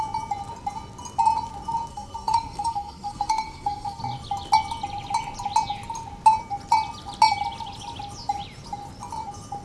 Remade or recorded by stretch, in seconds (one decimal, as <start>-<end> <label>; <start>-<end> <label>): 0.0-1.9 recorded; 1.9-4.0 remade; 4.0-9.6 recorded